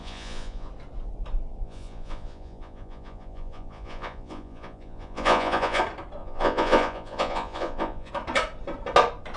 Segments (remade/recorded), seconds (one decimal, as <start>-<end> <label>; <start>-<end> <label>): 0.0-0.7 remade; 0.7-1.6 recorded; 1.6-5.8 remade; 5.8-6.2 recorded; 6.2-8.1 remade; 8.1-9.4 recorded